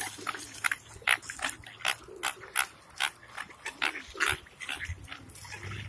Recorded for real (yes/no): yes